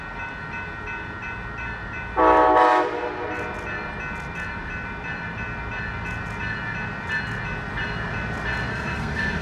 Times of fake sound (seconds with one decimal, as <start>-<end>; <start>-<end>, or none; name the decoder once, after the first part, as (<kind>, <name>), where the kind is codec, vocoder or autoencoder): 8.7-9.4 (codec, SNAC)